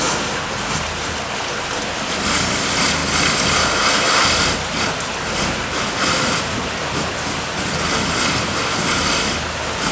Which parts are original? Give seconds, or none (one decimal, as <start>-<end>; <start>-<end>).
0.0-9.9